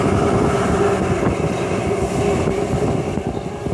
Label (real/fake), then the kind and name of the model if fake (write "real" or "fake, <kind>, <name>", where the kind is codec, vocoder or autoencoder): real